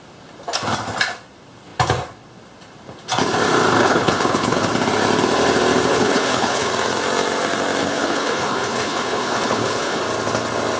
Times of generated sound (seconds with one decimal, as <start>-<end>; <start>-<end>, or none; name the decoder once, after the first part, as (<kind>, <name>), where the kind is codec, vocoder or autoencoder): 3.8-4.7 (codec, HILCodec); 5.9-6.7; 7.8-10.0

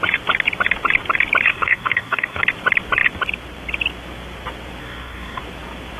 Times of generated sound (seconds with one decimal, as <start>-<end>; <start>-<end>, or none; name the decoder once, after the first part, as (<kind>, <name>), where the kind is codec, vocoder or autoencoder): 1.5-2.4 (codec, DAC); 4.8-5.4